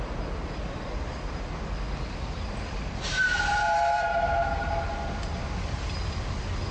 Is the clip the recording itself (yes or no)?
yes